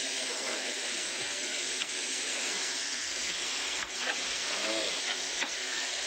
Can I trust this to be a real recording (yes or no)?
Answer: no